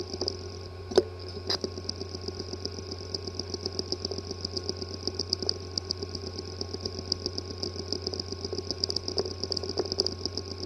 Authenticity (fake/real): real